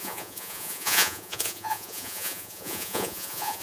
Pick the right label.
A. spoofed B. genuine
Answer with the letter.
A